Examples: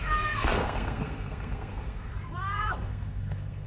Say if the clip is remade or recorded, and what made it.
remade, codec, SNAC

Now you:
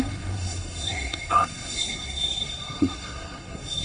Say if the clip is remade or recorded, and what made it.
remade, codec, SNAC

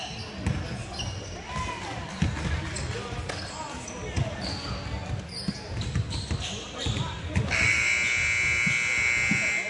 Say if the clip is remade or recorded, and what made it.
recorded